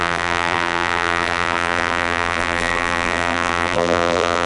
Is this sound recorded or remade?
remade